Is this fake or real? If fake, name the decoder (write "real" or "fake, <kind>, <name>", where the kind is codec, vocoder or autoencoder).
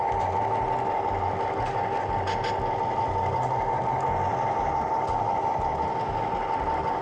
real